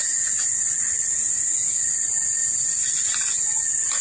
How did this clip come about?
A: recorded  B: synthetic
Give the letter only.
A